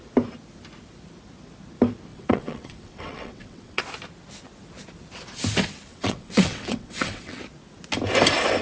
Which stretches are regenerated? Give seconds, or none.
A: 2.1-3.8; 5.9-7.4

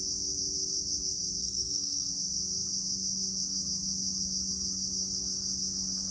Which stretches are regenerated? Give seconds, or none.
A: 1.4-2.1

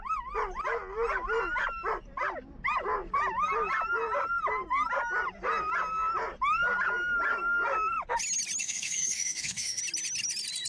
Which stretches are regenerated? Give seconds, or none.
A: 8.6-9.8

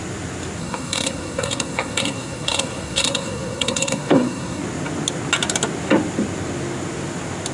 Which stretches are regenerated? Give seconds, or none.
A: 0.6-4.6

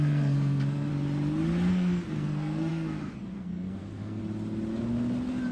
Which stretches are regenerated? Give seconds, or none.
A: 0.0-0.9; 1.7-4.2